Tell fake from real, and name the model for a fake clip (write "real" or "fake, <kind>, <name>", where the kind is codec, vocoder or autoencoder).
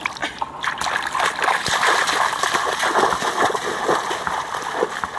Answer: real